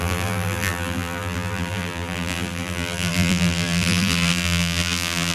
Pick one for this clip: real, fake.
fake